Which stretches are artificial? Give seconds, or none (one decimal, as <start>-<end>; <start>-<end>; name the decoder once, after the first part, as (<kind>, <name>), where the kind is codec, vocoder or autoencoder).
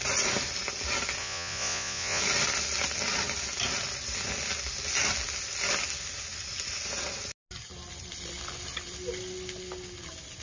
1.2-2.2 (vocoder, Vocos)